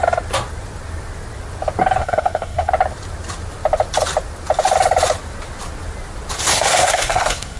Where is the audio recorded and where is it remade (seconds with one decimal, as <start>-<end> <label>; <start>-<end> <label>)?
0.0-2.0 recorded; 2.0-2.7 remade; 2.7-6.5 recorded; 6.5-7.6 remade